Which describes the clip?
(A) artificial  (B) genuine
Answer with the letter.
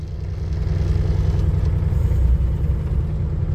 B